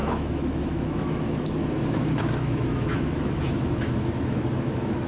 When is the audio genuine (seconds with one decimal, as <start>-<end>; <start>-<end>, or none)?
none